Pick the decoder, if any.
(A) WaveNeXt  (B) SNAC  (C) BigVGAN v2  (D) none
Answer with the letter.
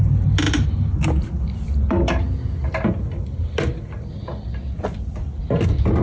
D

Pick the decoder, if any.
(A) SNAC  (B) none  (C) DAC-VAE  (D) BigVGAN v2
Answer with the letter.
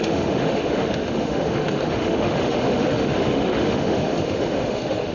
C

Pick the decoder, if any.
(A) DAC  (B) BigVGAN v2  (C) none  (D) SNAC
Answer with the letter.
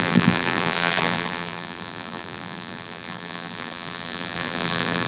B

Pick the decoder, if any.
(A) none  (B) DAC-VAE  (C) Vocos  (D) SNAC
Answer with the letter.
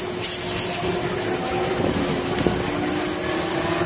A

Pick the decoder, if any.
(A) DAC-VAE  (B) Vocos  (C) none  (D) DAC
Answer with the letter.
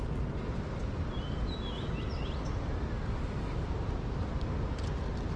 C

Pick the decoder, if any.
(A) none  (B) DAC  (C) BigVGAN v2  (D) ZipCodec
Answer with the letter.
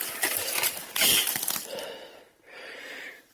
A